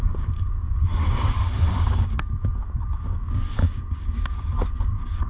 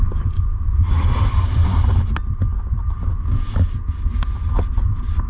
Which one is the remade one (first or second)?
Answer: first